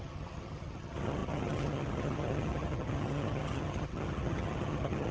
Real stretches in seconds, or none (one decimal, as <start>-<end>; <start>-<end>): none